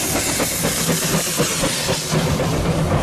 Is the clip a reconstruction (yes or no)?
no